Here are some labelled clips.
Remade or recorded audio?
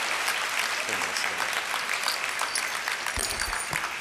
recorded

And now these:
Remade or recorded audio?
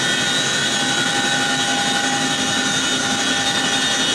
recorded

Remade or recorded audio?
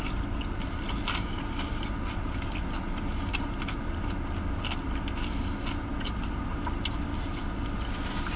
recorded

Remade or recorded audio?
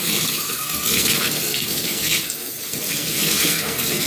remade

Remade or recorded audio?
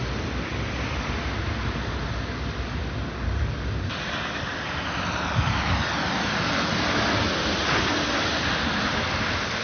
recorded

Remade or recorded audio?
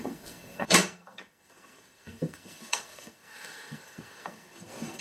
remade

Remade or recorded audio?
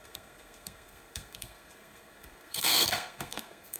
remade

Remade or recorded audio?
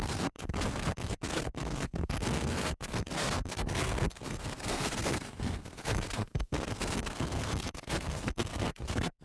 remade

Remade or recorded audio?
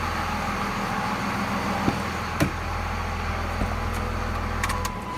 recorded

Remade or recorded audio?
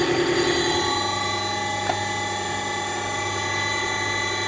recorded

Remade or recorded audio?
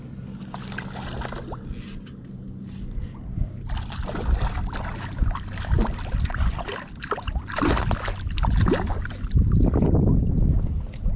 recorded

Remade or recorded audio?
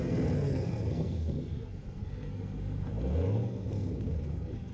remade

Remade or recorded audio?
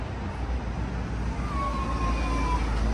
recorded